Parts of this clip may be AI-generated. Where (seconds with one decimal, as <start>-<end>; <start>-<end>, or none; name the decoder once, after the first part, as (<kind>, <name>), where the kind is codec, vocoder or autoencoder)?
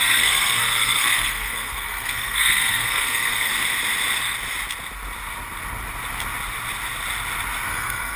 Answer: 0.0-3.5 (codec, SNAC); 7.7-8.2